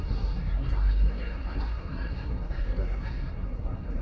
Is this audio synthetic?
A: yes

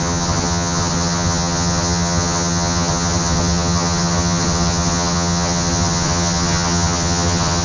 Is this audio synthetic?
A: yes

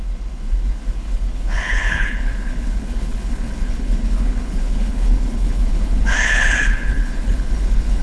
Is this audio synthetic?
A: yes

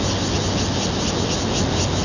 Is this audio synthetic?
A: no